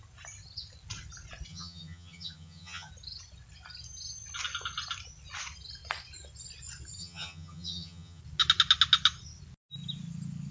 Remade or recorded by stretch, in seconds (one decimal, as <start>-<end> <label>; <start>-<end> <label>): 0.0-1.5 recorded; 1.5-2.9 remade; 2.9-7.0 recorded; 7.0-8.2 remade; 8.2-10.5 recorded